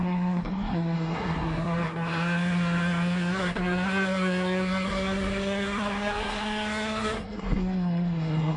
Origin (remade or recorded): remade